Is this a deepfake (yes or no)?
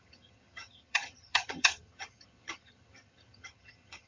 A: yes